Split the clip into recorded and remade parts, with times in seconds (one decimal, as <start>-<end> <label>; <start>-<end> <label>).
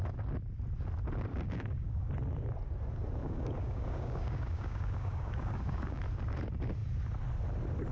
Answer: 0.0-1.3 recorded; 1.3-2.1 remade; 2.1-3.2 recorded; 3.2-6.0 remade; 6.0-7.9 recorded